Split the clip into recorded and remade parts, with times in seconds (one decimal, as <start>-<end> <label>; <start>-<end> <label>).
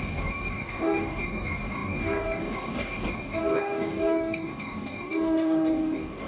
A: 0.0-6.3 remade